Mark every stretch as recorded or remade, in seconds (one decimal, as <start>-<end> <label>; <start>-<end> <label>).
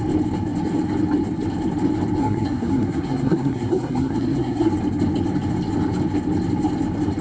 0.0-2.2 recorded; 2.2-4.7 remade; 4.7-7.2 recorded